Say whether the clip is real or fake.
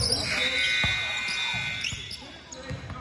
real